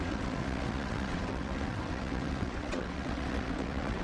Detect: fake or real fake